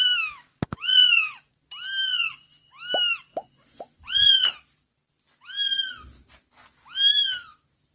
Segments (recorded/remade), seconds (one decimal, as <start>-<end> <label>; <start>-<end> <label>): 0.0-0.7 recorded; 0.7-1.5 remade; 1.5-2.1 recorded; 2.1-2.7 remade; 2.7-3.3 recorded; 3.3-4.5 remade; 4.5-7.9 recorded